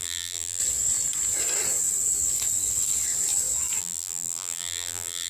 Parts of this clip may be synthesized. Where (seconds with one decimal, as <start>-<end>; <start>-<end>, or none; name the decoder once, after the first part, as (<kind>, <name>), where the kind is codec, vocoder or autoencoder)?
0.0-0.6 (vocoder, BigVGAN v2); 3.8-5.3